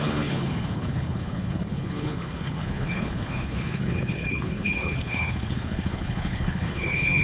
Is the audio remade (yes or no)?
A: yes